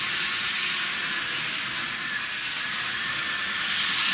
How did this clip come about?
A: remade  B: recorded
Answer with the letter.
B